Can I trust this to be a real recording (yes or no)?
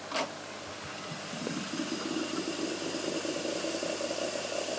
yes